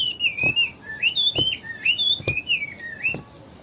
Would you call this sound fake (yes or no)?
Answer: no